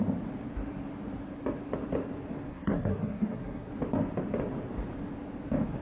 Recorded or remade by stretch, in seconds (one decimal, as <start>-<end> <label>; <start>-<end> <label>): 0.0-2.5 recorded; 2.5-3.7 remade; 3.7-5.8 recorded